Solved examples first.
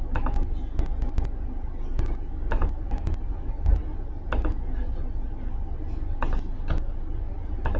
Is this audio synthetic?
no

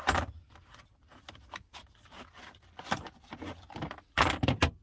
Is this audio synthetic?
no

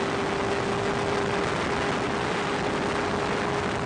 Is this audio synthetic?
no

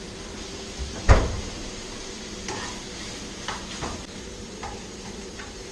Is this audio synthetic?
yes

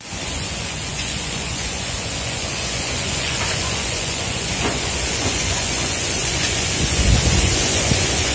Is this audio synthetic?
yes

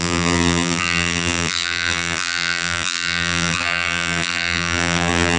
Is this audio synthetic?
yes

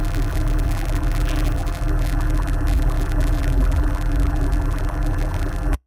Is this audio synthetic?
yes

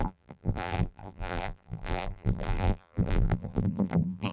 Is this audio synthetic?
yes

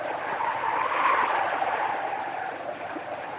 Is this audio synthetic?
no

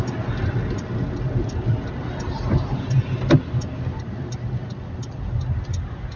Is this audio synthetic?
no